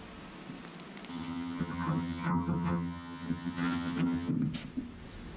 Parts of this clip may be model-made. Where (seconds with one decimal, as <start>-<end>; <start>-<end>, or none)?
1.1-4.3